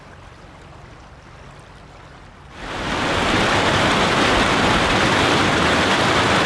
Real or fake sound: real